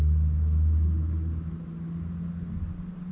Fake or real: real